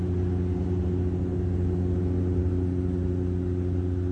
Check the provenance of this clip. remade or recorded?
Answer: recorded